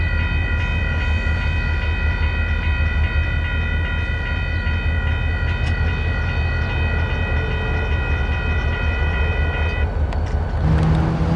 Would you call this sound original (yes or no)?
yes